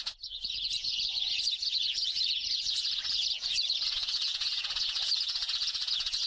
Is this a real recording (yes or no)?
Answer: no